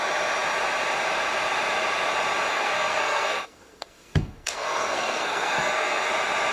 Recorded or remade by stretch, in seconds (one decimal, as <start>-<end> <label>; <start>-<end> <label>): 0.0-2.5 recorded; 2.5-6.1 remade; 6.1-6.5 recorded

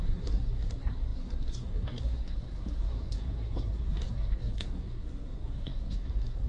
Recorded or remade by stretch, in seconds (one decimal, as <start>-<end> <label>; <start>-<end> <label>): 0.0-6.5 remade

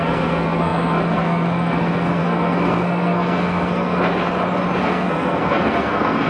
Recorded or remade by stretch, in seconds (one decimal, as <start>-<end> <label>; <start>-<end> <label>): 0.0-4.1 remade; 4.1-4.8 recorded; 4.8-6.3 remade

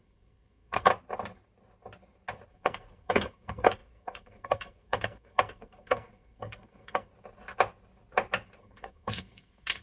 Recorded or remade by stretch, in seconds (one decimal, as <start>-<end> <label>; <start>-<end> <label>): 0.0-0.9 remade; 0.9-2.5 recorded; 2.5-7.1 remade; 7.1-8.6 recorded; 8.6-9.8 remade